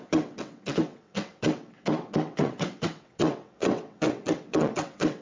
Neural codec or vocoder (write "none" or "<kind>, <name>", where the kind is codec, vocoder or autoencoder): vocoder, WaveNeXt